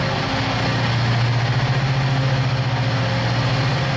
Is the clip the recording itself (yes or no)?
yes